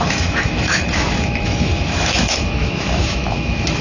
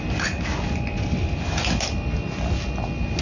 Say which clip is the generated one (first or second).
first